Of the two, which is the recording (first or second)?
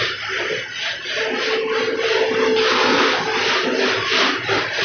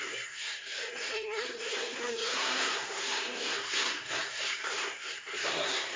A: first